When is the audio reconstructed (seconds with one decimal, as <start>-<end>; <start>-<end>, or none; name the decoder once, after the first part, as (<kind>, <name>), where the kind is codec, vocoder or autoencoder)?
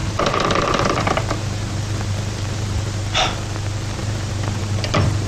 0.0-3.2 (vocoder, BigVGAN v2); 4.0-4.6